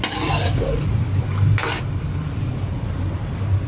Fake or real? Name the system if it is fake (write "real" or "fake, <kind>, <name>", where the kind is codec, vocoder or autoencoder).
real